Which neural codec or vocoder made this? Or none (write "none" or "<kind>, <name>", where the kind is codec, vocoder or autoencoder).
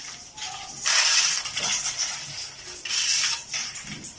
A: none